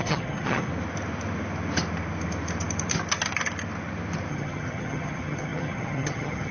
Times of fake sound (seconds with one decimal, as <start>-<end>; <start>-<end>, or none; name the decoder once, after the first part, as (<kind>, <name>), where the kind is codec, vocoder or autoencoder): 0.0-0.7 (vocoder, HiFi-GAN); 4.3-6.5

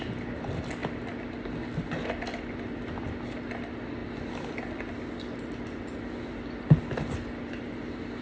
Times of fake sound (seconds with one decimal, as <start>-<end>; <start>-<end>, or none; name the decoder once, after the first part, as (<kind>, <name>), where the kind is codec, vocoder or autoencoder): none

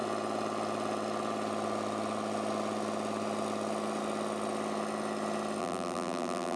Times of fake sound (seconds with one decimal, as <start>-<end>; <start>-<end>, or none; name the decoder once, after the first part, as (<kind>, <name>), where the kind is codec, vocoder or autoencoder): 5.6-6.6 (vocoder, BigVGAN v2)